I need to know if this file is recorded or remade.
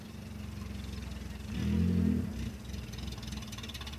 recorded